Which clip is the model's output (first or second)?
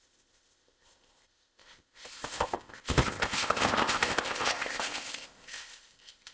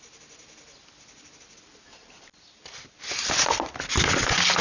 first